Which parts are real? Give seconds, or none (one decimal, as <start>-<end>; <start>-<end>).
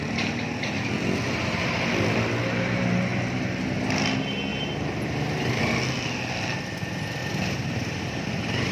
0.0-4.5; 5.6-7.2